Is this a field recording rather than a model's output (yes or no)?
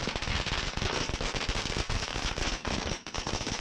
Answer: no